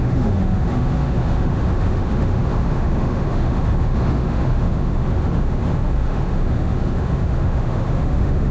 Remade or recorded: remade